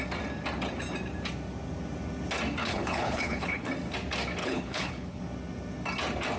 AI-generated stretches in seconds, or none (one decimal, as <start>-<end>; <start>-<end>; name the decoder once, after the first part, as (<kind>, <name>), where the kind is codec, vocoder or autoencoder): 2.6-3.7 (codec, HILCodec); 4.4-5.2